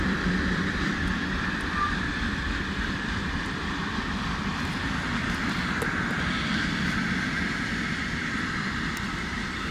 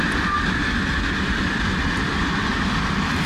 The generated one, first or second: first